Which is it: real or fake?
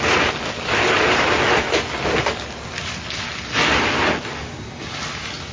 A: real